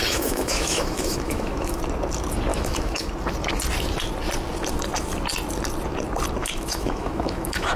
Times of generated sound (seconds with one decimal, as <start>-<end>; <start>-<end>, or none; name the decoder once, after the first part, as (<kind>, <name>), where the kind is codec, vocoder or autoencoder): 0.0-1.8 (autoencoder, DAC-VAE); 2.5-3.1; 6.4-7.8